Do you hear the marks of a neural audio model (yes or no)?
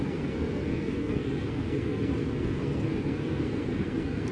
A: yes